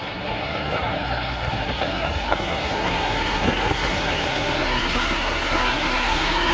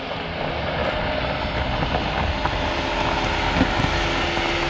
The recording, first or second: second